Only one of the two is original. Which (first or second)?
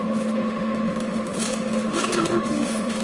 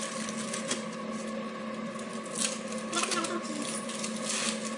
second